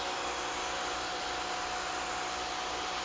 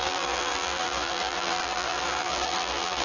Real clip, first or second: first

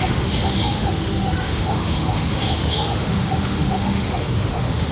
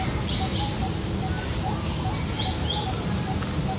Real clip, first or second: second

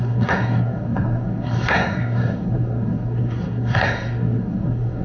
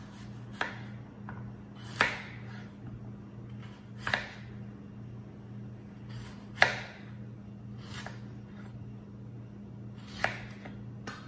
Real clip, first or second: second